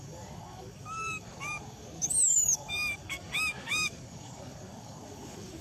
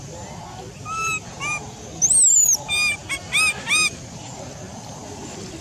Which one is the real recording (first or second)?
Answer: second